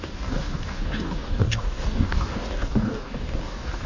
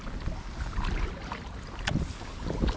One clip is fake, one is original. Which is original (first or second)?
second